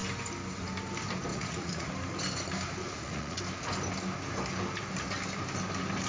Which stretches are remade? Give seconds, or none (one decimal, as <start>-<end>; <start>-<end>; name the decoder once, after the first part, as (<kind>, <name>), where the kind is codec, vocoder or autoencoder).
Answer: 1.3-1.9 (vocoder, Vocos); 2.8-3.4